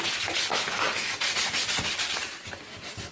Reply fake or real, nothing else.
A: real